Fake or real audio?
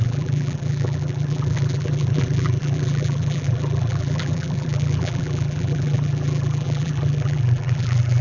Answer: fake